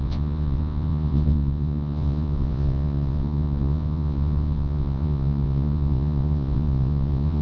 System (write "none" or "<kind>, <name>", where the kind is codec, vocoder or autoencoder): vocoder, Vocos